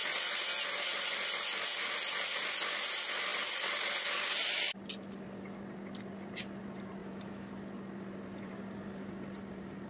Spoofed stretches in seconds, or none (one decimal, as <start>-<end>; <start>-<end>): 7.0-7.5